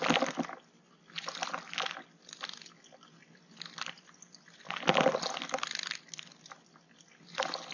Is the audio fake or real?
real